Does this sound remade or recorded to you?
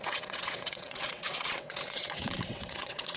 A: remade